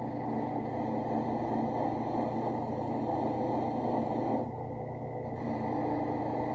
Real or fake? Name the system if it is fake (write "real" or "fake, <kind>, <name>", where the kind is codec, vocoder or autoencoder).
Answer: real